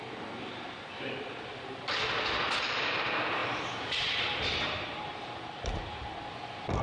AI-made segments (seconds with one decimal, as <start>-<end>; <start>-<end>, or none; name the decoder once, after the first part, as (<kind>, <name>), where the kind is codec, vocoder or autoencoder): 3.4-6.1 (vocoder, BigVGAN v2)